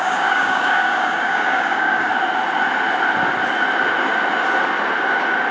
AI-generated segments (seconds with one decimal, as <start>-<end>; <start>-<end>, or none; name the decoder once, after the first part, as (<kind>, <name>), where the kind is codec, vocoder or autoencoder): 0.0-2.1 (codec, DAC)